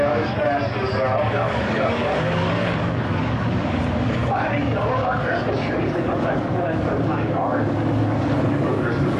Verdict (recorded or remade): remade